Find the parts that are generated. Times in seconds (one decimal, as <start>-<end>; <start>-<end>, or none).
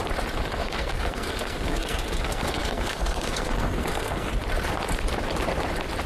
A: 0.6-4.3